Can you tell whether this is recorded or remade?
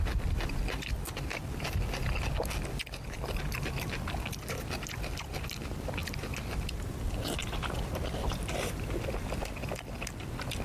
recorded